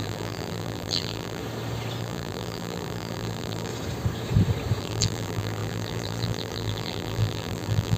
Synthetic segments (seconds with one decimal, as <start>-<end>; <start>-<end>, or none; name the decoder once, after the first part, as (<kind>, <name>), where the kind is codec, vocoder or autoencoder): 0.0-1.4 (vocoder, BigVGAN v2); 2.0-3.7; 4.8-8.0